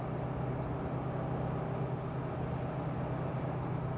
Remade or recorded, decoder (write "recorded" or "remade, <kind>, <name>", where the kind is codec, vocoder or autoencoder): recorded